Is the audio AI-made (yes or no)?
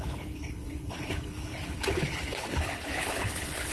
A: yes